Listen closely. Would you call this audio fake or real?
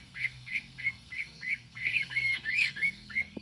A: fake